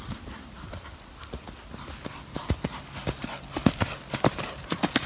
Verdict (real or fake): real